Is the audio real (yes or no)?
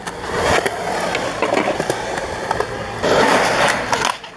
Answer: yes